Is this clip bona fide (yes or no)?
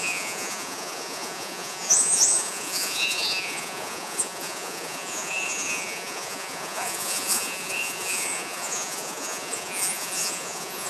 no